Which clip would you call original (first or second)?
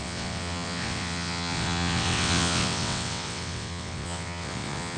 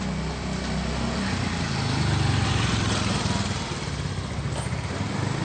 second